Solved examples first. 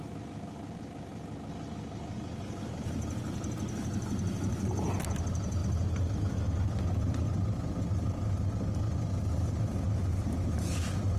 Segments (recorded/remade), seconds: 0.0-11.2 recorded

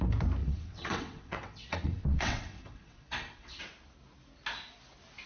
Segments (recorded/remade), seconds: 0.0-0.4 recorded; 0.4-3.6 remade; 3.6-5.3 recorded

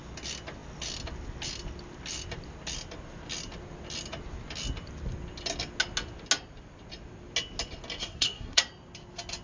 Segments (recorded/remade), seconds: 0.0-8.0 recorded; 8.0-8.6 remade; 8.6-9.4 recorded

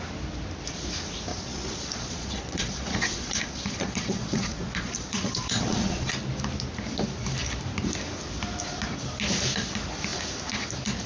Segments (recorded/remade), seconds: 0.0-1.3 recorded; 1.3-6.1 remade; 6.1-11.1 recorded

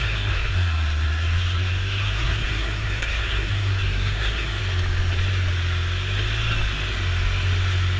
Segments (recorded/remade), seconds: 0.0-4.6 remade; 4.6-8.0 recorded